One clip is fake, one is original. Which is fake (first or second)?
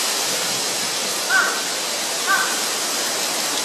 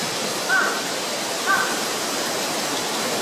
second